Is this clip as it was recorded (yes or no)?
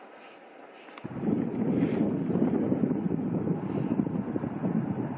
yes